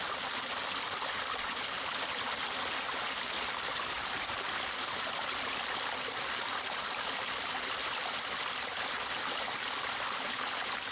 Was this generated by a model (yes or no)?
no